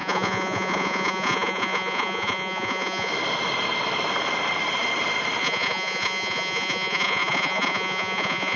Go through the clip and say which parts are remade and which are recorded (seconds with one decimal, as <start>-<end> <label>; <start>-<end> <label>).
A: 0.0-3.1 remade; 3.1-5.4 recorded; 5.4-8.6 remade